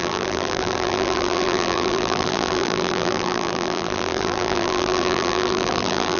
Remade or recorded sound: remade